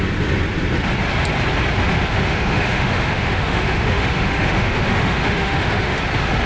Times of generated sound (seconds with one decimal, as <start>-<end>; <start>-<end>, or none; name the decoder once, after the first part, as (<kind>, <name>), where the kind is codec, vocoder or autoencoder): 2.1-6.0 (autoencoder, DAC-VAE)